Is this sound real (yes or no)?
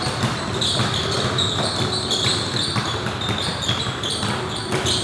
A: yes